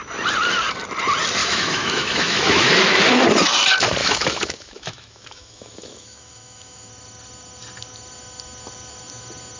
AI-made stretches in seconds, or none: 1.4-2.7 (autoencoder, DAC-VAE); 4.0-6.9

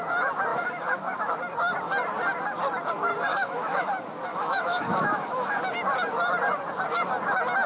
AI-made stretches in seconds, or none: 0.5-1.3 (autoencoder, DAC-VAE); 3.3-3.9; 4.3-5.6

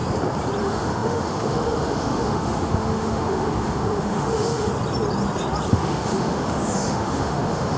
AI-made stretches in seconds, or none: 0.6-4.7 (autoencoder, DAC-VAE); 5.7-7.8